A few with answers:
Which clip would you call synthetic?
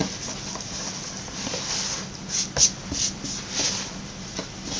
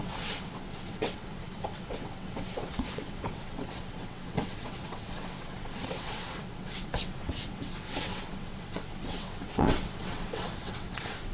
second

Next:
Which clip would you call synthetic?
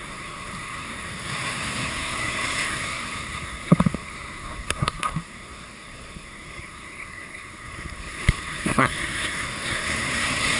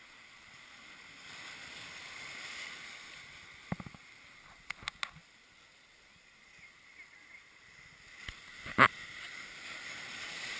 first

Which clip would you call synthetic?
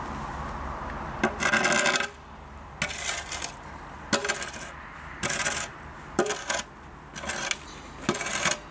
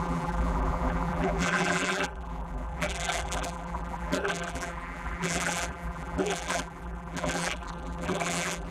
second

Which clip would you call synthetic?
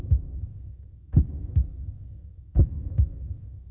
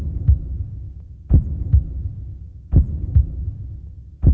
first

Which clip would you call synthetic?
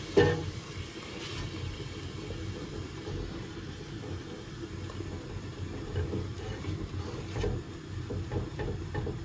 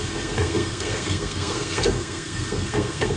second